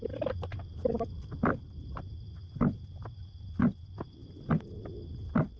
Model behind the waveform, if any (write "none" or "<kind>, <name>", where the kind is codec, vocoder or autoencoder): none